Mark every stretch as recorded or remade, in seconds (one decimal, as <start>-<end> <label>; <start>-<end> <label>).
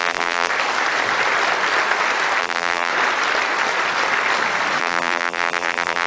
0.0-0.5 remade; 0.5-2.4 recorded; 2.4-2.9 remade; 2.9-4.8 recorded; 4.8-6.1 remade